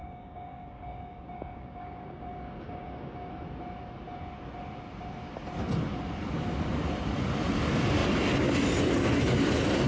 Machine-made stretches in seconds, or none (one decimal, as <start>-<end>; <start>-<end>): 0.0-3.3